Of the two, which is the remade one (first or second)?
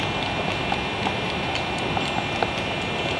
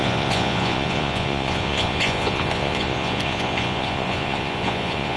second